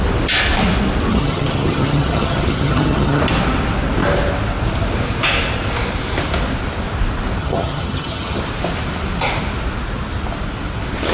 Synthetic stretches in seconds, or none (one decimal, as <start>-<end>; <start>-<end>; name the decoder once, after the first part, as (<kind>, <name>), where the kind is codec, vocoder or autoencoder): 1.1-3.2 (vocoder, HiFi-GAN); 7.4-8.4